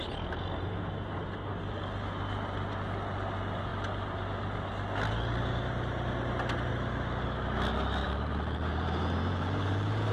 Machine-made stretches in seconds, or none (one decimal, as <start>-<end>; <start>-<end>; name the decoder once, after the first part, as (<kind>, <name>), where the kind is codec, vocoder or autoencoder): 8.0-10.1 (vocoder, BigVGAN v2)